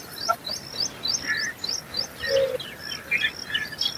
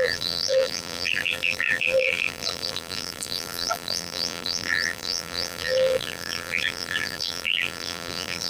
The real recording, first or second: first